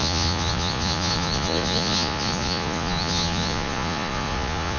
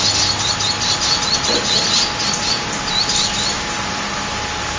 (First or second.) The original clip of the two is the second